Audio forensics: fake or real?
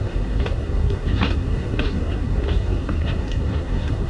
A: fake